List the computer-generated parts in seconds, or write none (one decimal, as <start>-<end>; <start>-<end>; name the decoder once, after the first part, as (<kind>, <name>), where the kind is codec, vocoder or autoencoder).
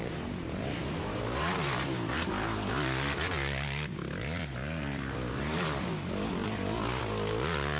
none